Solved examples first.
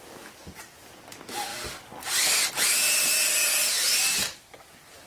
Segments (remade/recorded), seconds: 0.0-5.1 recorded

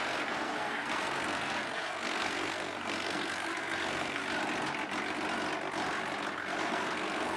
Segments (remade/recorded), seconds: 0.0-4.2 remade; 4.2-6.3 recorded; 6.3-7.4 remade

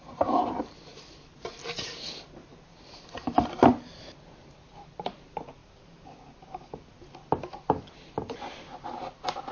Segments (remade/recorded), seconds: 0.0-5.6 recorded; 5.6-6.9 remade; 6.9-9.5 recorded

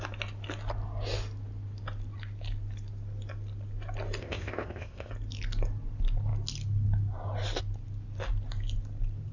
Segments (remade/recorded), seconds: 0.0-4.2 recorded; 4.2-5.1 remade; 5.1-9.3 recorded

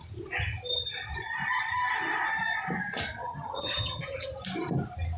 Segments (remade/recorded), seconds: 0.0-3.2 recorded; 3.2-4.3 remade; 4.3-5.2 recorded